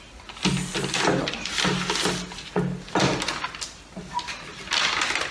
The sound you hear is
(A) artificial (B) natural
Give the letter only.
B